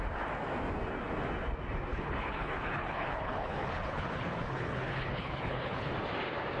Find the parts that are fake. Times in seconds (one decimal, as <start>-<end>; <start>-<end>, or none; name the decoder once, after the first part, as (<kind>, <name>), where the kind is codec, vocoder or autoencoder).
1.9-5.9 (codec, HILCodec)